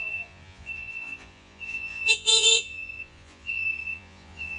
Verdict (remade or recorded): remade